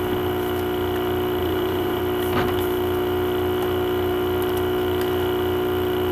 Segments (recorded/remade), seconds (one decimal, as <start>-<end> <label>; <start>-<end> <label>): 0.0-1.4 recorded; 1.4-2.0 remade; 2.0-6.1 recorded